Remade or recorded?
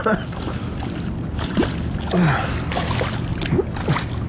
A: recorded